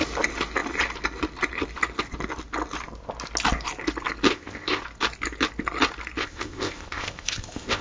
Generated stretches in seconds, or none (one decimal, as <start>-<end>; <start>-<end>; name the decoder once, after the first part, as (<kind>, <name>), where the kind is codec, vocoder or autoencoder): 4.3-4.8 (codec, ZipCodec); 6.2-7.8